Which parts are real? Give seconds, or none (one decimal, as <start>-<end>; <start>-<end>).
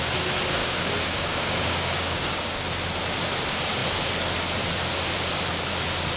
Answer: 0.0-0.6; 2.6-6.2